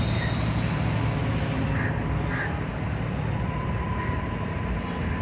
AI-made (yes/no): no